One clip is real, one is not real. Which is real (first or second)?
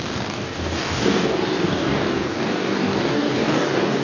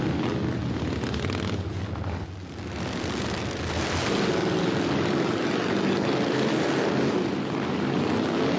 second